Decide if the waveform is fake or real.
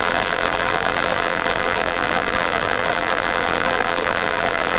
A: fake